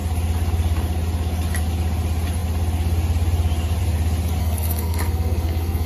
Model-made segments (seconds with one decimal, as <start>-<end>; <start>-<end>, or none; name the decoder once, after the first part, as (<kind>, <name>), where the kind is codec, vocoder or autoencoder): 4.4-5.9 (codec, SNAC)